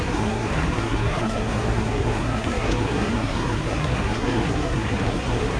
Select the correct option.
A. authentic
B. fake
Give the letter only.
B